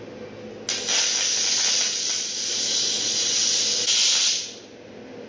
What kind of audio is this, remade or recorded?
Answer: recorded